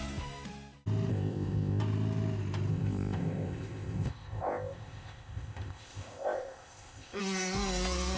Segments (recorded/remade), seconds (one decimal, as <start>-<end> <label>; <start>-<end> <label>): 0.0-1.1 recorded; 1.1-1.8 remade; 1.8-2.7 recorded; 2.7-7.2 remade; 7.2-8.2 recorded